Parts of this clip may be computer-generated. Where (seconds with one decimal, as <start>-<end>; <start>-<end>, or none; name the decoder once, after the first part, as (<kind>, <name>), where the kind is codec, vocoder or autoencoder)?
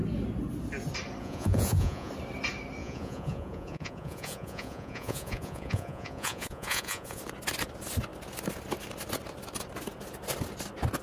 1.2-2.1 (vocoder, Vocos); 2.8-7.2